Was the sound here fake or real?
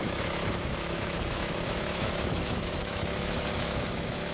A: fake